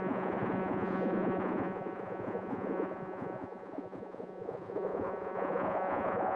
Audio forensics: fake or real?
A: fake